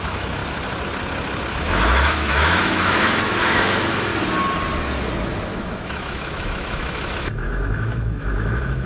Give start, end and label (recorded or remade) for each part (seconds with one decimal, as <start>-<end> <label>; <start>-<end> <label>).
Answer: 0.0-0.4 remade; 0.4-1.5 recorded; 1.5-4.1 remade; 4.1-5.4 recorded; 5.4-8.9 remade